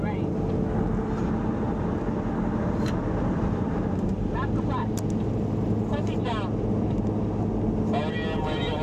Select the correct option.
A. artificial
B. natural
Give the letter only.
B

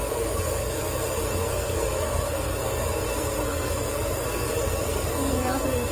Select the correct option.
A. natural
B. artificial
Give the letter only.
B